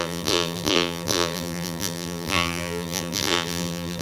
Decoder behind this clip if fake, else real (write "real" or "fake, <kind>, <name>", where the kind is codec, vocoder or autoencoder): fake, vocoder, BigVGAN v2